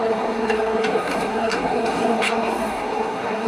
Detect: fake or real fake